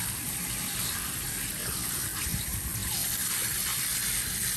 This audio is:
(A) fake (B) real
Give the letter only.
B